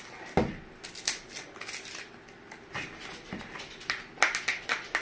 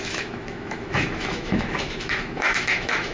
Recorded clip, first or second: first